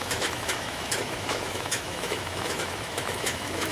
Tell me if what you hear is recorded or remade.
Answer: remade